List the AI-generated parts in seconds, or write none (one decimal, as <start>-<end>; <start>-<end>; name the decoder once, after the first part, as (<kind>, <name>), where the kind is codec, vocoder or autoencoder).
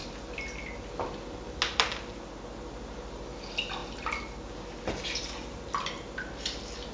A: none